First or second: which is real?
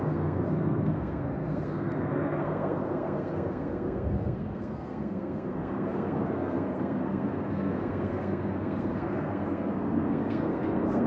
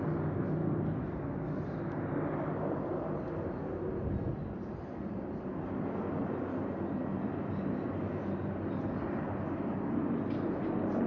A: second